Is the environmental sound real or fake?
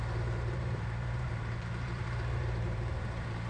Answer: fake